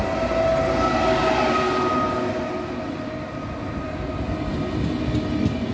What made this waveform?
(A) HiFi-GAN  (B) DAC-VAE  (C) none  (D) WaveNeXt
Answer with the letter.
C